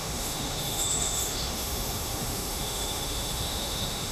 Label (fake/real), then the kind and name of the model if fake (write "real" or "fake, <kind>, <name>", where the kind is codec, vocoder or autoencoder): fake, autoencoder, DAC-VAE